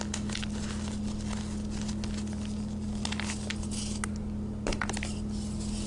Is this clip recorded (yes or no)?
yes